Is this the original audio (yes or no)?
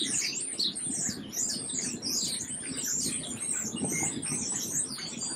no